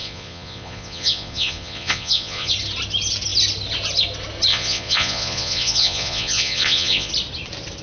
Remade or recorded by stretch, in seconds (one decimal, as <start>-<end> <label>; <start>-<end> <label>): 0.0-2.5 remade; 2.5-4.5 recorded; 4.5-7.1 remade; 7.1-7.8 recorded